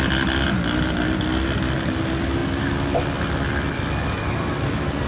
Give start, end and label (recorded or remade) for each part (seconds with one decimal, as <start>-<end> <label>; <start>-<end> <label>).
0.0-5.1 recorded